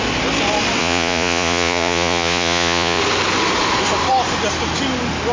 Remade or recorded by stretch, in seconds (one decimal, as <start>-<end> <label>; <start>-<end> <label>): 0.0-0.8 recorded; 0.8-3.0 remade; 3.0-5.3 recorded